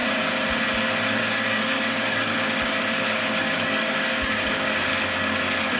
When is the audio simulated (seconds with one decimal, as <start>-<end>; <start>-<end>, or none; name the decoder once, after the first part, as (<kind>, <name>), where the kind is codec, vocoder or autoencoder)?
1.2-2.3 (codec, DAC); 2.9-4.9